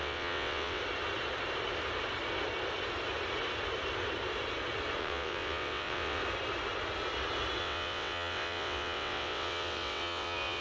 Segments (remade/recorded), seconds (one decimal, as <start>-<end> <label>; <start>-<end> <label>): 0.0-0.8 remade; 0.8-5.0 recorded; 5.0-6.2 remade; 6.2-7.6 recorded; 7.6-10.6 remade